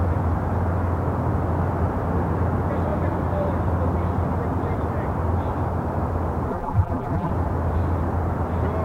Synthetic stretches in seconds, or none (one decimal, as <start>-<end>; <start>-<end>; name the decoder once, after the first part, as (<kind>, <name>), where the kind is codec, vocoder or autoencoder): 6.5-7.3 (vocoder, BigVGAN v2)